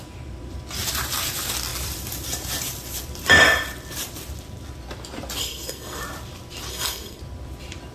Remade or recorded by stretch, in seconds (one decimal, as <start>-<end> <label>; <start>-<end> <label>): 0.0-5.4 recorded; 5.4-6.0 remade; 6.0-6.7 recorded; 6.7-7.2 remade; 7.2-7.9 recorded

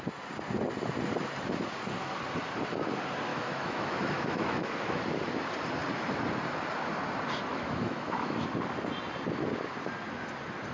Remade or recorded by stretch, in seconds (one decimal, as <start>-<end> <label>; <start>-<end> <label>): 0.0-3.3 recorded; 3.3-5.0 remade; 5.0-7.5 recorded; 7.5-8.4 remade; 8.4-10.7 recorded

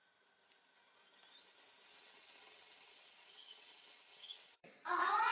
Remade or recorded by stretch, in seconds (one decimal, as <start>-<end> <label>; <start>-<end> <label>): 0.0-1.9 recorded; 1.9-5.3 remade

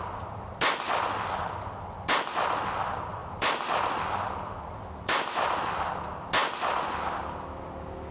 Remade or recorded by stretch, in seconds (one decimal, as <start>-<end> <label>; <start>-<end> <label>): 0.0-3.2 recorded; 3.2-5.9 remade; 5.9-6.4 recorded; 6.4-7.6 remade; 7.6-8.1 recorded

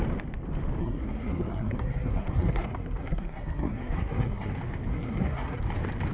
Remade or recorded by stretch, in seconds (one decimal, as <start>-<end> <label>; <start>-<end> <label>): 0.0-0.8 recorded; 0.8-4.5 remade; 4.5-4.9 recorded; 4.9-5.6 remade; 5.6-6.1 recorded

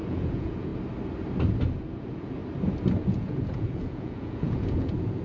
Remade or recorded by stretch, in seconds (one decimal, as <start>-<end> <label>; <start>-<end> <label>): 0.0-0.7 remade; 0.7-1.9 recorded; 1.9-2.4 remade; 2.4-3.0 recorded; 3.0-5.2 remade

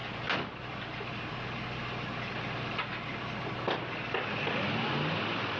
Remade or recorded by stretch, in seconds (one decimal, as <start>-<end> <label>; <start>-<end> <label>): 0.0-5.6 recorded